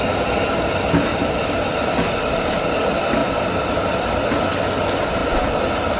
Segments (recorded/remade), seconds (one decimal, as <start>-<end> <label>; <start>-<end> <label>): 0.0-1.1 recorded; 1.1-2.1 remade; 2.1-6.0 recorded